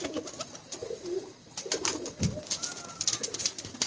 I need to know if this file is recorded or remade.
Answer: recorded